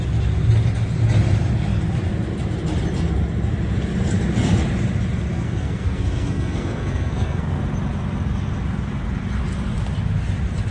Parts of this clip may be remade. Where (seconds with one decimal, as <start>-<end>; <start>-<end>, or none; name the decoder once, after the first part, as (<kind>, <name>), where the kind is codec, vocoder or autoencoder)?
5.3-7.6 (codec, SNAC)

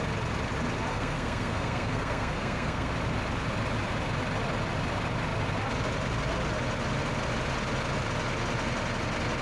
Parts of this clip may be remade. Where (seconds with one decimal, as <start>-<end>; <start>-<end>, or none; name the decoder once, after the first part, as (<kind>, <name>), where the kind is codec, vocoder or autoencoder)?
0.9-2.9 (codec, SNAC)

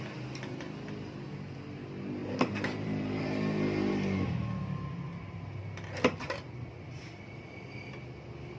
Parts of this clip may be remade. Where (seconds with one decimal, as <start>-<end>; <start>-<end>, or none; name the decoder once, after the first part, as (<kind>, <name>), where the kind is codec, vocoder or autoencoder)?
2.2-3.2 (vocoder, BigVGAN v2)

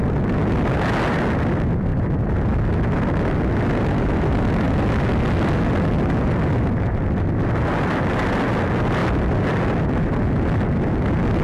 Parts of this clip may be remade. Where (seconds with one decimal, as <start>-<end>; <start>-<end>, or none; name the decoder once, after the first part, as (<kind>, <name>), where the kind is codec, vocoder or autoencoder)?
none

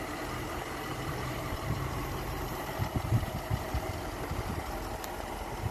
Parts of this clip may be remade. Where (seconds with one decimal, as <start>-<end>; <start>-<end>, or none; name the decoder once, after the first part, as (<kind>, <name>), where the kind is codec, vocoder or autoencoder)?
0.9-2.7 (vocoder, BigVGAN v2)

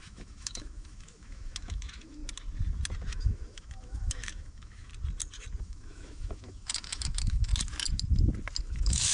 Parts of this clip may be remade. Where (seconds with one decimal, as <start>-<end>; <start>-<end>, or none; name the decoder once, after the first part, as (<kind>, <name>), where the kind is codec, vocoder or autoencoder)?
0.0-2.2 (autoencoder, DAC-VAE); 3.1-4.9; 5.6-7.5; 8.6-9.1